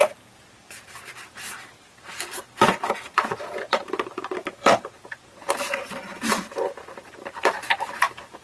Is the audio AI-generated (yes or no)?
yes